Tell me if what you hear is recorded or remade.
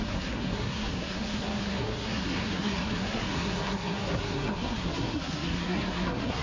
remade